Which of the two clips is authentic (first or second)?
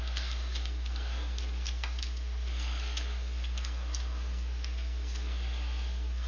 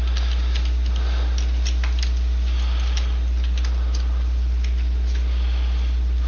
second